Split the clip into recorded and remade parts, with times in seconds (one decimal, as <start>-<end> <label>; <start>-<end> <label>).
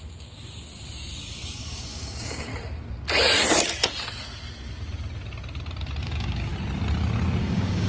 0.0-2.5 remade; 2.5-6.0 recorded; 6.0-6.5 remade; 6.5-7.4 recorded; 7.4-7.9 remade